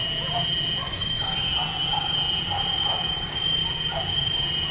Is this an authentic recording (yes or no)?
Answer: yes